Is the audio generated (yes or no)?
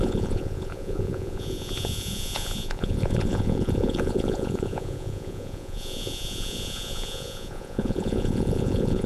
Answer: yes